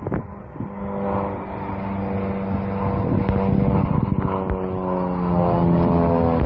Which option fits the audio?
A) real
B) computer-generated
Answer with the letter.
A